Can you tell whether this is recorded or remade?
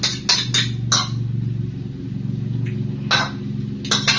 recorded